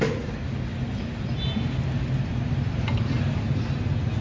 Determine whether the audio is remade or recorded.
recorded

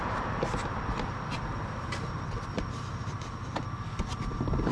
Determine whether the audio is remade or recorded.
recorded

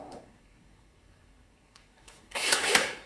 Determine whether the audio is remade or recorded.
remade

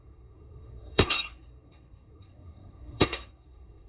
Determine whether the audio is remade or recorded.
remade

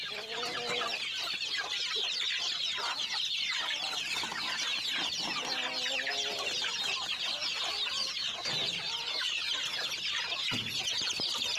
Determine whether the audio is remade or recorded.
recorded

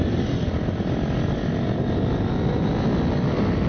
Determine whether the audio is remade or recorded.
recorded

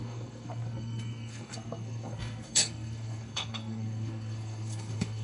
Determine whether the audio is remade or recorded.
remade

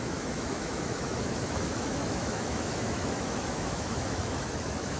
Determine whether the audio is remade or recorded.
remade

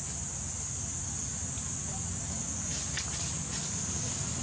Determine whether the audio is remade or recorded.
recorded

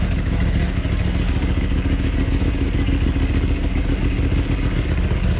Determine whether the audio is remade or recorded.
remade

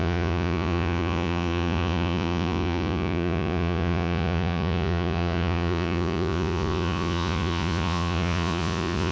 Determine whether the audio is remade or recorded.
remade